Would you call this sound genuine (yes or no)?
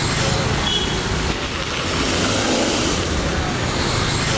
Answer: yes